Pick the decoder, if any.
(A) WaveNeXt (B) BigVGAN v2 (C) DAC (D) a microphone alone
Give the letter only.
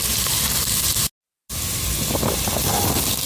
D